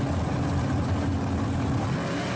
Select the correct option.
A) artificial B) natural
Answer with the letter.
B